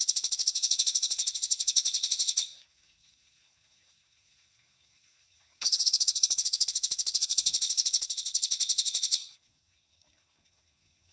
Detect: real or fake fake